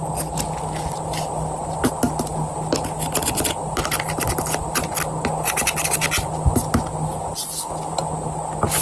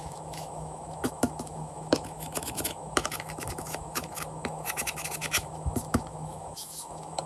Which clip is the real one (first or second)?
first